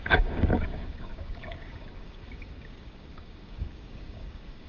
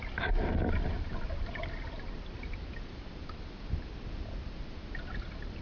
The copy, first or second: first